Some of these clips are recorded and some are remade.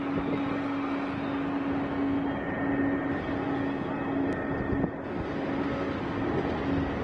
recorded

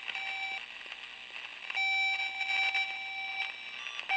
recorded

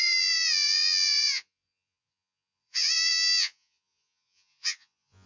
remade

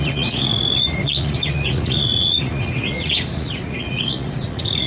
remade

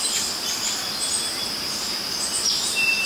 recorded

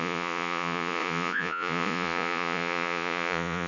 remade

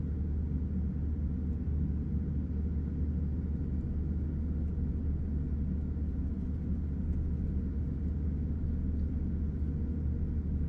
recorded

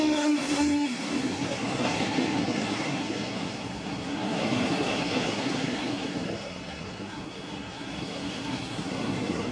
remade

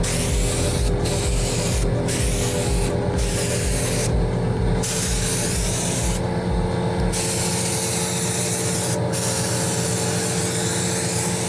recorded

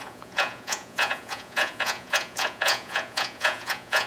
remade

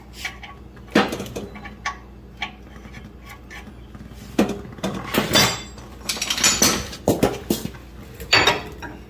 recorded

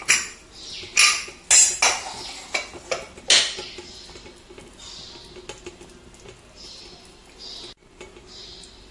recorded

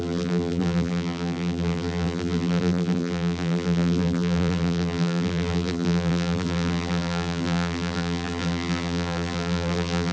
remade